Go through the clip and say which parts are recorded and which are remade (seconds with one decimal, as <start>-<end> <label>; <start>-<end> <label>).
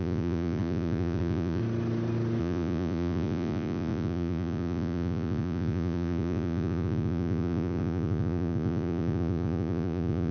0.0-1.6 remade; 1.6-2.4 recorded; 2.4-10.3 remade